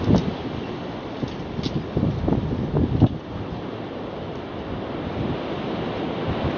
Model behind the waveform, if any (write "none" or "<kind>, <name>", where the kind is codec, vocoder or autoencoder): none